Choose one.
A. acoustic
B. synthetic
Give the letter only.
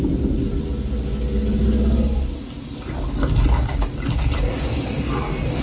A